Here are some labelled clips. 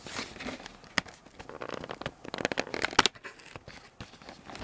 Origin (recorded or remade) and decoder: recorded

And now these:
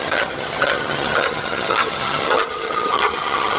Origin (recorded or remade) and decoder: remade, vocoder, HiFi-GAN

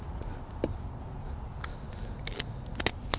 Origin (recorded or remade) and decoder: recorded